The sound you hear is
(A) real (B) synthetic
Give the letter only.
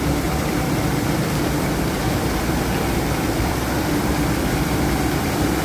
B